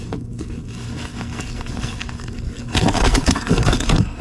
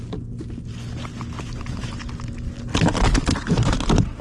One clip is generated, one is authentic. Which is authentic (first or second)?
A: second